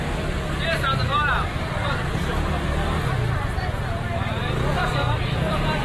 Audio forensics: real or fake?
fake